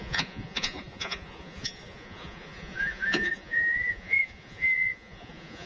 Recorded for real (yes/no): no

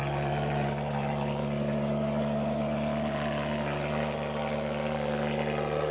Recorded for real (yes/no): yes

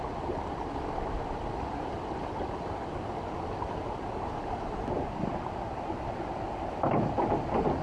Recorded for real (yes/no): yes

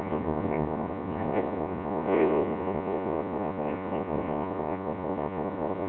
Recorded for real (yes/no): no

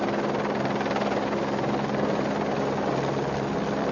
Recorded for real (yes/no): yes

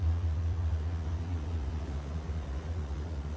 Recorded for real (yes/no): no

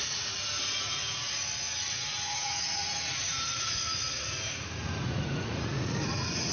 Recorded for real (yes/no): no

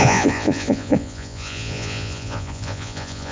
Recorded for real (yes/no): no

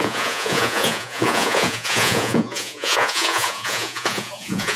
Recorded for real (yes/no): no